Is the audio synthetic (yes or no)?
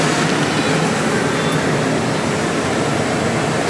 no